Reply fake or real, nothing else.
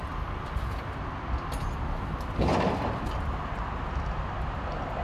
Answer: real